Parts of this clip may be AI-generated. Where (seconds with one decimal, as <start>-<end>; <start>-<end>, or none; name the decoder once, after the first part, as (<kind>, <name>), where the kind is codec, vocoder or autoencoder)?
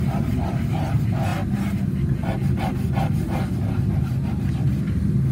none